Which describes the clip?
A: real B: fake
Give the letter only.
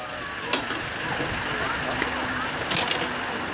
A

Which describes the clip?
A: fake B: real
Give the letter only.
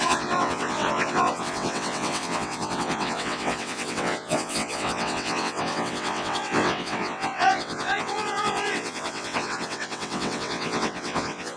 A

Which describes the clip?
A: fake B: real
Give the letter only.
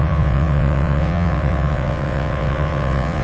A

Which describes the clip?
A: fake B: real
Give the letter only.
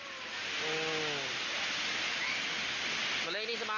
B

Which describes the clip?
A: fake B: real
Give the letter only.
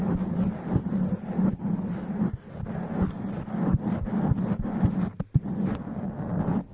B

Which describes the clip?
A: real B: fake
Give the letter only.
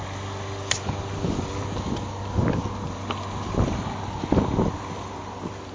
A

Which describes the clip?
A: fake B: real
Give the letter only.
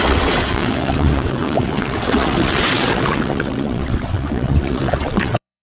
A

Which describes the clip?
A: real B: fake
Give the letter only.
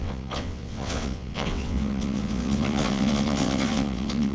B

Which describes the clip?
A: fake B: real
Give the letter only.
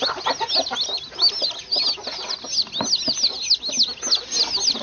B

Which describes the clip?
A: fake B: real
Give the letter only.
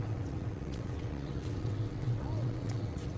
A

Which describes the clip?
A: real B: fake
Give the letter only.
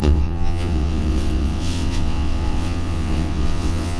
B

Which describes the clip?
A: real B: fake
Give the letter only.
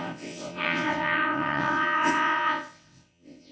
B